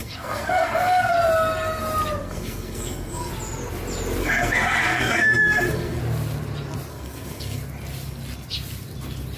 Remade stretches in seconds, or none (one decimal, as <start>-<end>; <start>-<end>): 0.0-1.1; 2.2-3.3; 4.2-6.0; 6.9-7.6